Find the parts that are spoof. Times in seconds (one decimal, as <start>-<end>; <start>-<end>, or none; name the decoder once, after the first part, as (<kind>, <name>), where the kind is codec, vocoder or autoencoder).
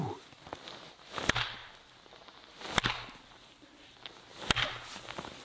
none